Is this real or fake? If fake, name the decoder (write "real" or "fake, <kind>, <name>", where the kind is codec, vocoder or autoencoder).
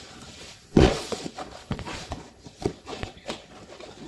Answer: fake, vocoder, Vocos